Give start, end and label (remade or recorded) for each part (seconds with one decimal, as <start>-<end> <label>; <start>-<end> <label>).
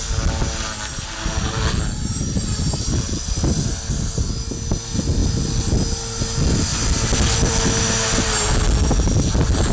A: 0.0-9.7 recorded